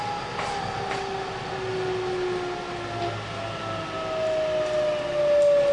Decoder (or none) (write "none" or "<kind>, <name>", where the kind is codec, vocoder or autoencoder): none